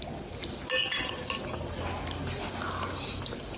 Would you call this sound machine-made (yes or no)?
no